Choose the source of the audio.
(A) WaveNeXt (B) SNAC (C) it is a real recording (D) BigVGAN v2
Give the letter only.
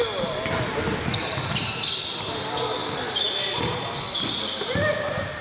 C